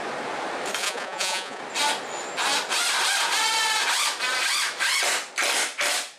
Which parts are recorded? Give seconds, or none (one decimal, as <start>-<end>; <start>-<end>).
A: 0.0-0.8; 1.6-6.2